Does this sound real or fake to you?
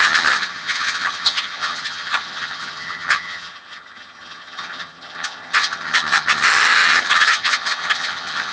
fake